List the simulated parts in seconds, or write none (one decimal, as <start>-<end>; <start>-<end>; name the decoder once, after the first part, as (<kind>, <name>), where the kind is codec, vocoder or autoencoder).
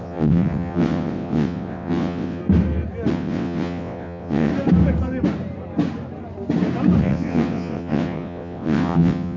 0.0-2.4 (vocoder, WaveNeXt); 3.1-4.5; 7.0-9.4